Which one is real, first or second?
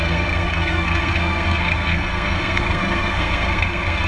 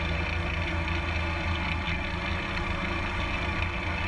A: second